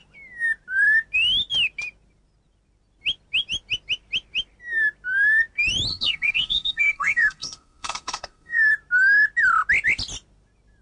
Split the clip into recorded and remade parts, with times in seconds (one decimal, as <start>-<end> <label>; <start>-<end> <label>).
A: 0.0-5.9 recorded; 5.9-8.7 remade; 8.7-10.8 recorded

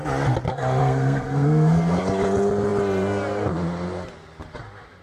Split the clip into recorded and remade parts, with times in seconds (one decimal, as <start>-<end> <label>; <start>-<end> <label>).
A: 0.0-0.8 recorded; 0.8-2.0 remade; 2.0-5.0 recorded